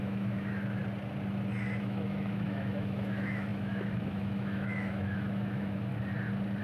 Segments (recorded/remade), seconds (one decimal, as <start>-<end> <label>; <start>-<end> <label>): 0.0-0.8 remade; 0.8-1.8 recorded; 1.8-5.9 remade; 5.9-6.6 recorded